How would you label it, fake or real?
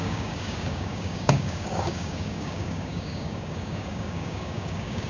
fake